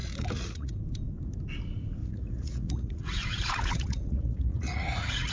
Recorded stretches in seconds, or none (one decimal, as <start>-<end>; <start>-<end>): 0.7-2.0